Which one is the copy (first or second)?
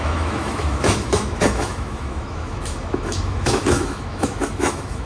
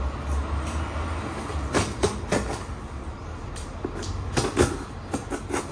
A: first